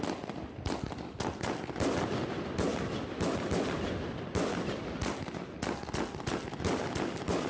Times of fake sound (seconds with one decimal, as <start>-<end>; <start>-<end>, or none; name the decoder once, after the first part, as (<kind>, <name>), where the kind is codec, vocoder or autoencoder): none